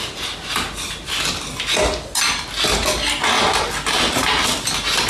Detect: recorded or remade recorded